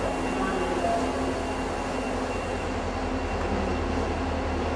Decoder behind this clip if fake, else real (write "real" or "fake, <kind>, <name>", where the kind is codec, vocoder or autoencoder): real